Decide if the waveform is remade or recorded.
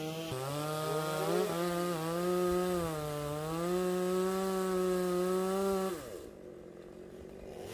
recorded